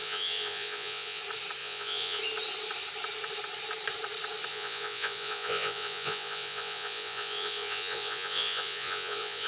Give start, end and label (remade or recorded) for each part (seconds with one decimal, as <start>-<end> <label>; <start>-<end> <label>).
0.0-1.2 remade; 1.2-1.6 recorded; 1.6-2.2 remade; 2.2-4.5 recorded; 4.5-9.5 remade